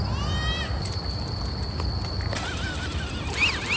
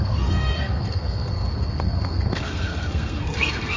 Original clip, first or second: first